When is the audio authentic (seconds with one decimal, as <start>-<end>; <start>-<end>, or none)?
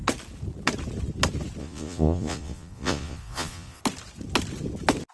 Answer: 0.0-1.6; 3.8-5.1